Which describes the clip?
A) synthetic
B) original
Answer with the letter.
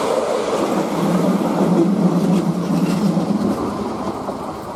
B